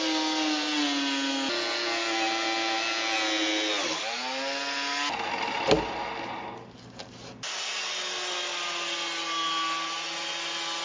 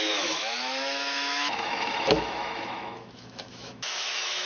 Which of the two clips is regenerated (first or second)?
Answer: second